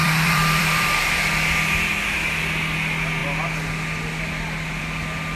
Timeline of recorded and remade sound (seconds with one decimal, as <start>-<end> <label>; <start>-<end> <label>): 0.0-0.9 remade; 0.9-5.4 recorded